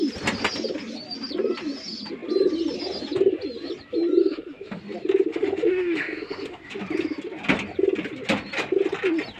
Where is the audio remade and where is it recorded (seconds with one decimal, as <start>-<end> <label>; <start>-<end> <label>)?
0.0-4.2 recorded; 4.2-4.8 remade; 4.8-5.3 recorded; 5.3-6.7 remade; 6.7-9.4 recorded